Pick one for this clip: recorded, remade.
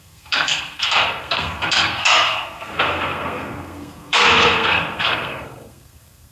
remade